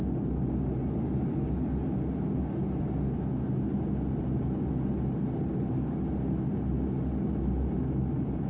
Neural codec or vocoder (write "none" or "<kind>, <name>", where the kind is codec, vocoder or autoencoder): none